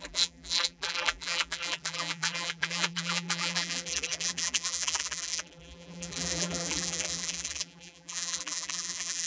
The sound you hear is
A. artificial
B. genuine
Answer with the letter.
A